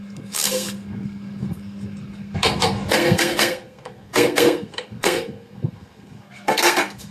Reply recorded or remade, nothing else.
remade